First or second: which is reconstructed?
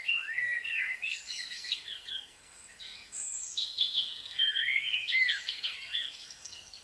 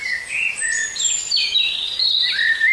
first